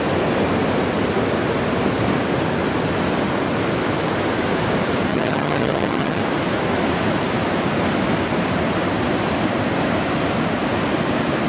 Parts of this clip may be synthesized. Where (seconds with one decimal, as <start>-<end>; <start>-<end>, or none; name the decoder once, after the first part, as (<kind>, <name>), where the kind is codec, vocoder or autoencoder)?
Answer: 5.1-6.2 (vocoder, HiFi-GAN)